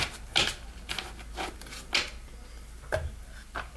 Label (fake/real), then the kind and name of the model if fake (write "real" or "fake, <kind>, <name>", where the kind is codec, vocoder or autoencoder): real